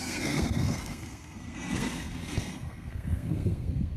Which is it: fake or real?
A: fake